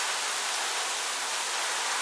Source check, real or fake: real